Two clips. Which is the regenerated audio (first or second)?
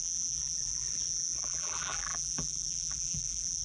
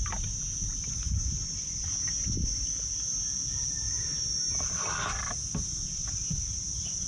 first